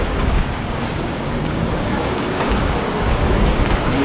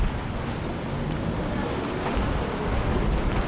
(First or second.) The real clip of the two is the second